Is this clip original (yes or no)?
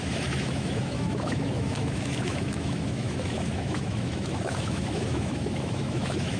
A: no